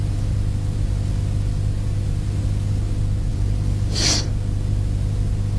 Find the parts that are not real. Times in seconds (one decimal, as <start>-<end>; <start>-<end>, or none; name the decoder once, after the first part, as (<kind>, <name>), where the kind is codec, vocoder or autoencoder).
3.3-4.3 (vocoder, BigVGAN v2)